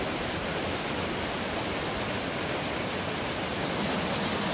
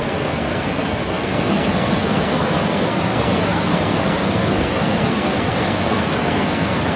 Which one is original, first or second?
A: first